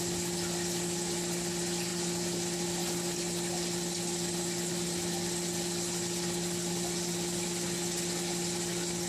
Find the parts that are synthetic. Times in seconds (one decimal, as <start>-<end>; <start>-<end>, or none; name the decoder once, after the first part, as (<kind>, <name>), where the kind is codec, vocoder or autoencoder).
none